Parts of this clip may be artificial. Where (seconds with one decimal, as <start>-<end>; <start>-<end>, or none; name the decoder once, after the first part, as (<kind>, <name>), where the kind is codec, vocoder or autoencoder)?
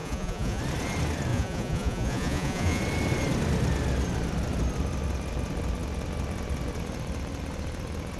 0.0-0.6 (vocoder, Vocos); 1.3-2.8